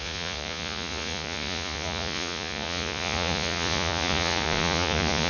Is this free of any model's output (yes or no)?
no